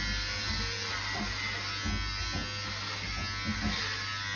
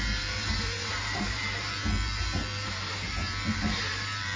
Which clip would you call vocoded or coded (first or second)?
second